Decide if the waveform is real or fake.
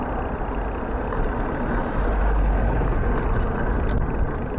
real